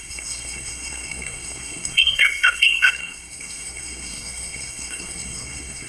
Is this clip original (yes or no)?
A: no